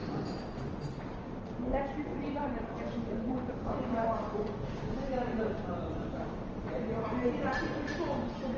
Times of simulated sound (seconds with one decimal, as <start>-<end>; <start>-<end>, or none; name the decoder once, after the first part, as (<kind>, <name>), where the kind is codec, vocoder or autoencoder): 0.0-0.7 (vocoder, BigVGAN v2); 2.1-3.8; 5.3-7.3